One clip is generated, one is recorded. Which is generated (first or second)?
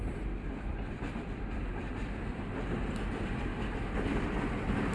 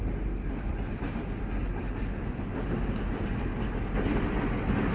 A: first